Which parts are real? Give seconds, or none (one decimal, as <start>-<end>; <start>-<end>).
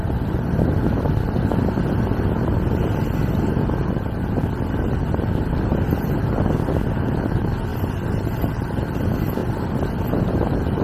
0.0-7.7; 9.0-10.8